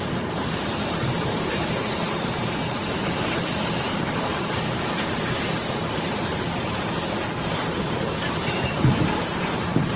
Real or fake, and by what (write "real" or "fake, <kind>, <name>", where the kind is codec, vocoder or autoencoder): fake, vocoder, BigVGAN v2